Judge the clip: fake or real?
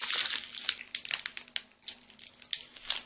real